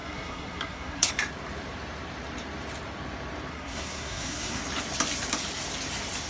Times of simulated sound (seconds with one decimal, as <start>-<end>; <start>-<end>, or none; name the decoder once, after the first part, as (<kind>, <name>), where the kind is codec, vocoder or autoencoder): 0.0-1.1 (codec, SNAC); 3.5-4.6